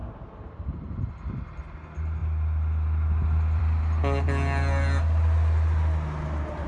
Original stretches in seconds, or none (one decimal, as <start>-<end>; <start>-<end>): 1.1-6.7

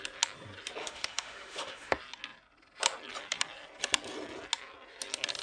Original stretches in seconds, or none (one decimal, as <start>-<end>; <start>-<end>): 0.0-0.8; 1.9-5.4

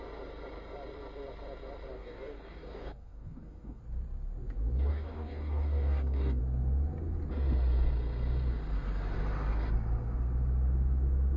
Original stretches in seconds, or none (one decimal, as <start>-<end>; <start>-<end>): 0.0-1.9; 3.8-4.9; 6.4-11.4

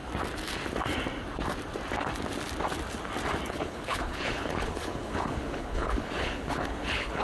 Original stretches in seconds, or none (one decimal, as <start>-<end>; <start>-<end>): 0.0-3.5